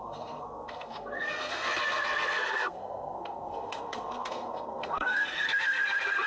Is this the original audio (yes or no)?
no